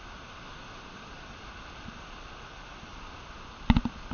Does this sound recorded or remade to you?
recorded